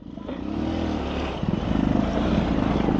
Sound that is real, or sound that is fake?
real